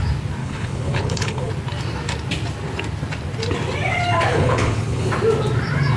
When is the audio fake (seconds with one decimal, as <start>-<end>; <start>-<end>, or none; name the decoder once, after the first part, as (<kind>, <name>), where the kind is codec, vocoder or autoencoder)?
0.4-1.5 (codec, HILCodec); 4.3-5.1